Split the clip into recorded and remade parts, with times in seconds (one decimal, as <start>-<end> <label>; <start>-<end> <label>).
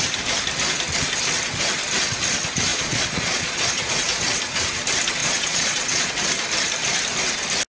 0.0-2.7 recorded; 2.7-3.9 remade; 3.9-5.2 recorded; 5.2-6.1 remade; 6.1-7.7 recorded